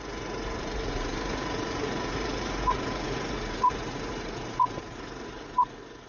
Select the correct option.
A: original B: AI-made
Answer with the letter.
B